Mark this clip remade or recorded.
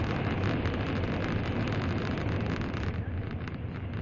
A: recorded